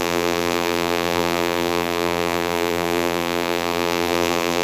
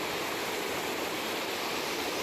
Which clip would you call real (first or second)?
second